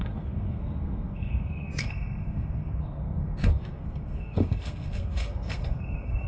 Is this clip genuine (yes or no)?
no